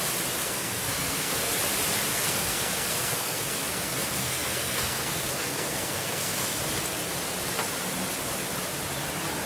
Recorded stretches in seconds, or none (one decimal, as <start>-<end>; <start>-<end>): 0.0-0.4; 1.5-2.1; 6.6-9.5